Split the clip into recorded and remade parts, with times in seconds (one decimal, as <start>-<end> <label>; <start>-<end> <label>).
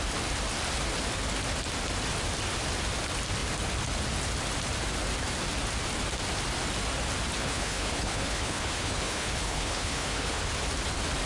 0.0-7.4 recorded; 7.4-10.5 remade; 10.5-11.3 recorded